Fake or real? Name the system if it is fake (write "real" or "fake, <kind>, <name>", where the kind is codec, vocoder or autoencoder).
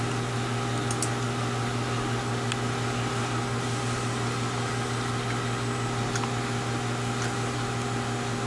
real